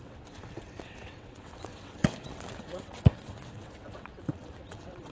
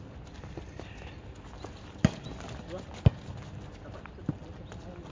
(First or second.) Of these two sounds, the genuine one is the second